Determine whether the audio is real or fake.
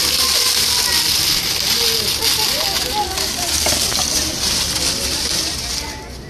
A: real